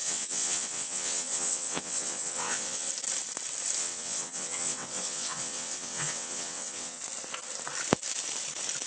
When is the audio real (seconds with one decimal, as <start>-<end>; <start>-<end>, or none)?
2.9-3.8; 7.0-8.9